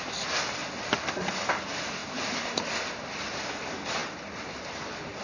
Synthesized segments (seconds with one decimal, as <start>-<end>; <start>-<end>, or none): none